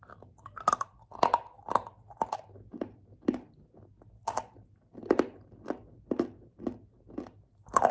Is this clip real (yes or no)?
yes